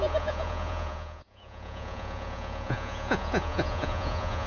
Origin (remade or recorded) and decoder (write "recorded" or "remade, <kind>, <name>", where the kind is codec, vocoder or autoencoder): remade, vocoder, Vocos